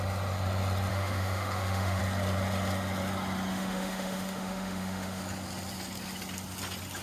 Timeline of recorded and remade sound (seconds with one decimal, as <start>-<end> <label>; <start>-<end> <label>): 0.0-0.9 recorded; 0.9-2.0 remade; 2.0-3.5 recorded; 3.5-5.2 remade; 5.2-7.0 recorded